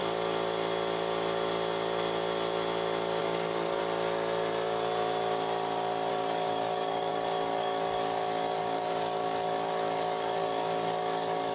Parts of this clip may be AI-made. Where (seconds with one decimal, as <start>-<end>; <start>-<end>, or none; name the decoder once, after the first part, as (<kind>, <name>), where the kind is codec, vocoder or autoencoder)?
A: 3.2-3.8 (codec, DAC); 6.1-11.5